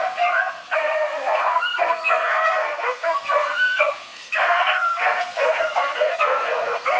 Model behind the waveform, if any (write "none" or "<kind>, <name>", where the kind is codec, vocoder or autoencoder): codec, SNAC